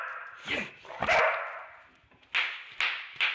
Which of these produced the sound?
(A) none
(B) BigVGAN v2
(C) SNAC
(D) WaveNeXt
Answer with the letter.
A